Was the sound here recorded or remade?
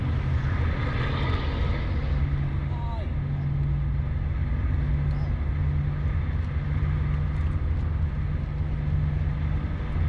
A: recorded